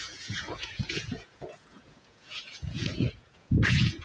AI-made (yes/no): yes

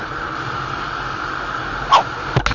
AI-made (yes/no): no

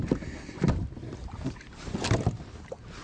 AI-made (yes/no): no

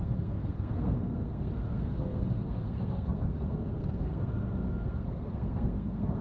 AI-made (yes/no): yes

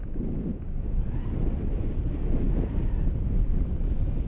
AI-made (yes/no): no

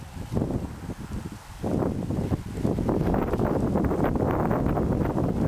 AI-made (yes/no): no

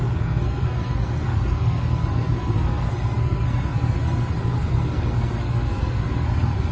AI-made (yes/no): yes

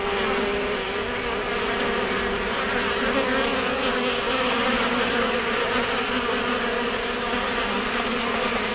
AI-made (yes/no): no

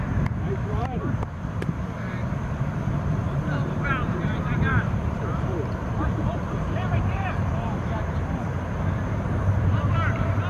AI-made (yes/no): yes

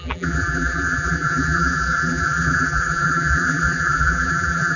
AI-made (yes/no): yes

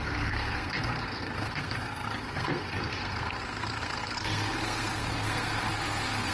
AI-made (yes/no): yes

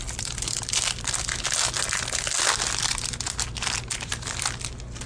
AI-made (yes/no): no